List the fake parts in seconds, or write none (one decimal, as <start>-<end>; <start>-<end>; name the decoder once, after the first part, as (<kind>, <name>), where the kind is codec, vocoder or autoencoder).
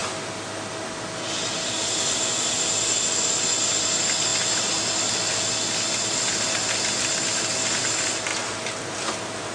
none